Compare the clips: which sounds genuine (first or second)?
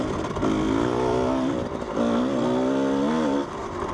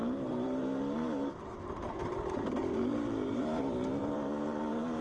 first